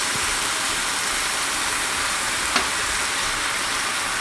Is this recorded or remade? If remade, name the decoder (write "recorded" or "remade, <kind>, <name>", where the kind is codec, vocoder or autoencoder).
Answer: recorded